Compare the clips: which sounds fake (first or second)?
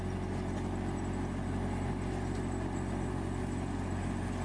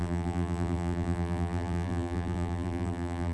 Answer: second